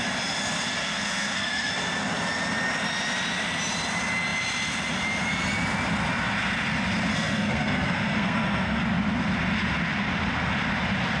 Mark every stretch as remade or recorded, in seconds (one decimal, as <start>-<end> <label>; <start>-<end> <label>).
0.0-0.8 recorded; 0.8-1.7 remade; 1.7-7.1 recorded; 7.1-8.8 remade; 8.8-11.2 recorded